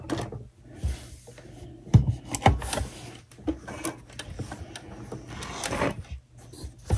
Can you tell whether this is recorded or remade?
recorded